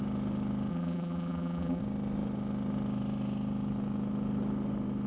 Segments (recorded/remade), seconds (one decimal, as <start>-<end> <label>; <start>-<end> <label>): 0.0-0.7 recorded; 0.7-1.8 remade; 1.8-5.1 recorded